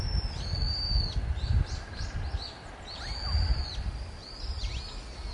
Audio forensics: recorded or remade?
recorded